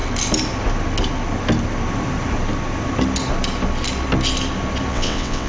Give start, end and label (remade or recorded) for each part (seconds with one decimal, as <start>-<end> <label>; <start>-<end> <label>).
0.0-4.9 recorded; 4.9-5.5 remade